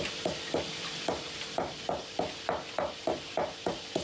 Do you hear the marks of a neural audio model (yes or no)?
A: yes